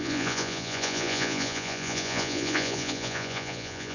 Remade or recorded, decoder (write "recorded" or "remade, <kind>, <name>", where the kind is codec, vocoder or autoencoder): remade, vocoder, Vocos